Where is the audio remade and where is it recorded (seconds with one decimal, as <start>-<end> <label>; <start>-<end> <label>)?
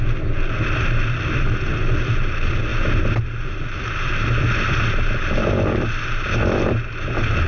0.0-7.5 recorded